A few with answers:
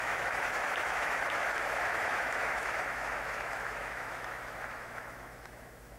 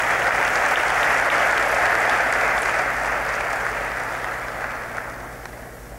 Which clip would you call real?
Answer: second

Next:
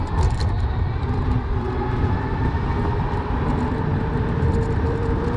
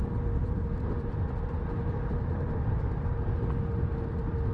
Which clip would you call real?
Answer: second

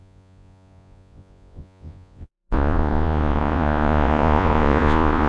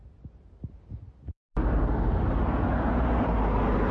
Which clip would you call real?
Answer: second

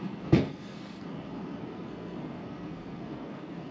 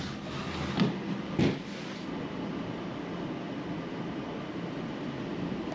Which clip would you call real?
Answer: second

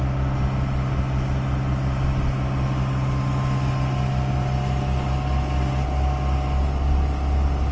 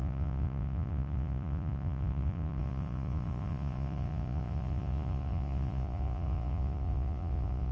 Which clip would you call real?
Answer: first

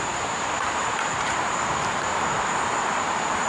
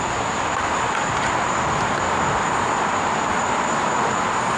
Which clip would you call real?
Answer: second